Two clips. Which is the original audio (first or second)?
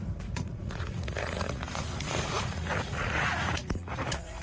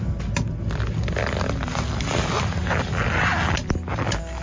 second